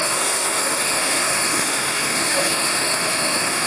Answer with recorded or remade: remade